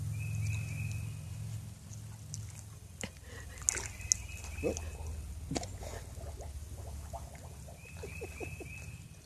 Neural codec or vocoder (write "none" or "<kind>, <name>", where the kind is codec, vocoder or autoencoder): none